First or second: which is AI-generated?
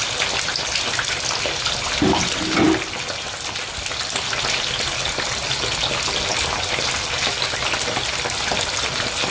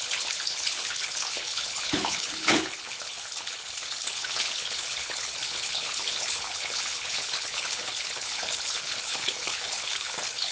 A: second